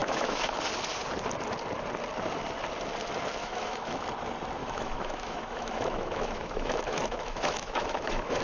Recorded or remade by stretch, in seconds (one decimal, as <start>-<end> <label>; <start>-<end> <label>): 0.0-0.5 remade; 0.5-3.4 recorded; 3.4-4.0 remade; 4.0-4.6 recorded; 4.6-8.4 remade